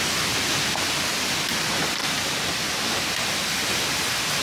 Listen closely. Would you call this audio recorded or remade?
recorded